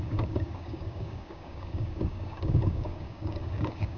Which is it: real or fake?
fake